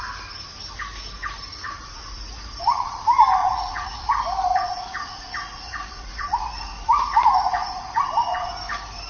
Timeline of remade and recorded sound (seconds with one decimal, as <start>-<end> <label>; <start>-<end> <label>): 0.0-1.5 recorded; 1.5-3.0 remade; 3.0-3.4 recorded; 3.4-4.1 remade; 4.1-4.5 recorded; 4.5-8.5 remade; 8.5-9.1 recorded